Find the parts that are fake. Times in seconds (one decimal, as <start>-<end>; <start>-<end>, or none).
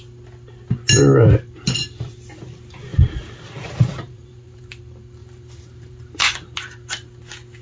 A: 2.9-4.8; 5.2-6.3